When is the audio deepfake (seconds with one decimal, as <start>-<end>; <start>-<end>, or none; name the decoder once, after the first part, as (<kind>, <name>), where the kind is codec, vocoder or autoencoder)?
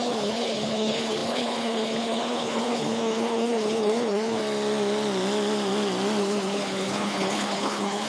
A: 0.0-4.4 (codec, HILCodec); 6.2-8.1